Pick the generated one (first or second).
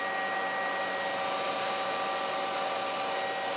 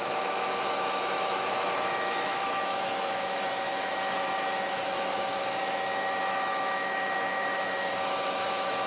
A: second